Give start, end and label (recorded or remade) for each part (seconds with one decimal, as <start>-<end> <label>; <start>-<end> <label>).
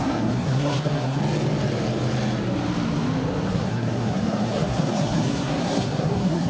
0.0-1.2 remade; 1.2-3.5 recorded; 3.5-6.5 remade